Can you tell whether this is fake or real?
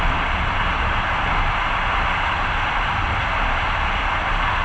real